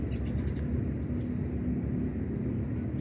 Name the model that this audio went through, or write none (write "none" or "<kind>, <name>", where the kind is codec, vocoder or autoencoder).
none